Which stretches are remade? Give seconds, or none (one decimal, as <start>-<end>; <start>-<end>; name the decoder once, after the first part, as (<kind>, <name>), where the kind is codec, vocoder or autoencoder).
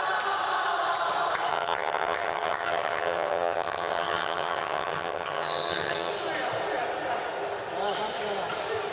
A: 1.5-6.1 (vocoder, HiFi-GAN)